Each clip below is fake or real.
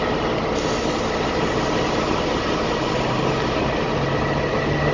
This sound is real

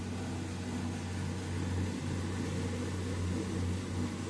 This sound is real